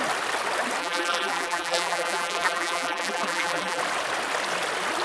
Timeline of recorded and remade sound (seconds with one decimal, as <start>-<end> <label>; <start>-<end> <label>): 0.0-0.8 recorded; 0.8-3.8 remade; 3.8-5.0 recorded